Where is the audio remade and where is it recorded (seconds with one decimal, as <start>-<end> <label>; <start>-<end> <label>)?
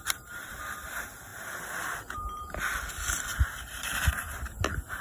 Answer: 0.0-5.0 recorded